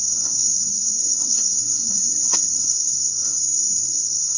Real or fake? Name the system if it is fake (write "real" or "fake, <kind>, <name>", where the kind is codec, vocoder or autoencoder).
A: fake, codec, SNAC